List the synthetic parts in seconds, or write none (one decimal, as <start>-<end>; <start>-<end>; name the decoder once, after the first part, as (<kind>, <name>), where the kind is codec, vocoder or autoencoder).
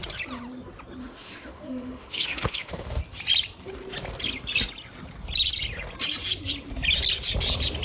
1.0-3.0 (autoencoder, DAC-VAE)